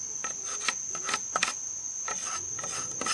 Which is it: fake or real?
real